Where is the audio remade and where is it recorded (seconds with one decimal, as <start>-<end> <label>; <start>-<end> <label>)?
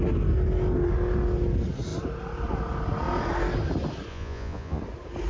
0.0-4.1 recorded; 4.1-4.8 remade; 4.8-5.3 recorded